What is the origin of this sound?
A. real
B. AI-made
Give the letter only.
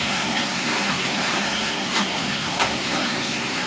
B